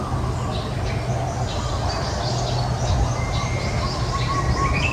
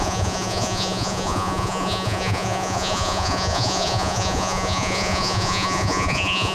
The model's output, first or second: second